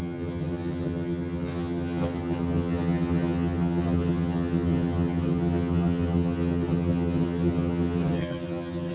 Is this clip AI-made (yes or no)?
yes